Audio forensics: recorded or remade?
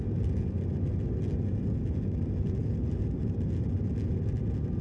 recorded